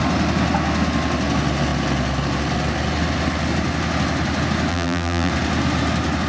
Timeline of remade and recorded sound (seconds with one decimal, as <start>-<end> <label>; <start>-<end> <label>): 0.0-4.7 recorded; 4.7-5.3 remade; 5.3-6.3 recorded